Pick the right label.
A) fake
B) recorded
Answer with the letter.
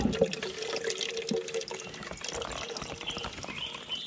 B